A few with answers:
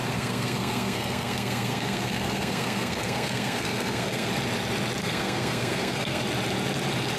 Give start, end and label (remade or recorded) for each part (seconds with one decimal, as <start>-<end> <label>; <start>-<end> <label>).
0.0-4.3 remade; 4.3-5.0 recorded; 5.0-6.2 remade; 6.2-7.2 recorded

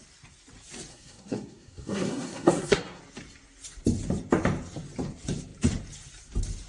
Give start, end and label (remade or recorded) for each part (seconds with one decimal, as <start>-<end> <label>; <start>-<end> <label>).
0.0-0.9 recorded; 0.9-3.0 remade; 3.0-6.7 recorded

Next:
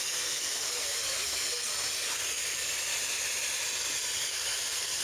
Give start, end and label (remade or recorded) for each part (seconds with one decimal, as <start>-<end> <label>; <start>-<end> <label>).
0.0-1.7 remade; 1.7-2.2 recorded; 2.2-2.7 remade; 2.7-4.2 recorded; 4.2-5.0 remade

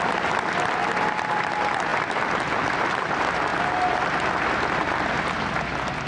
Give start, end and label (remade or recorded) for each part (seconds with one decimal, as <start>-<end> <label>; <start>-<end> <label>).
0.0-6.1 recorded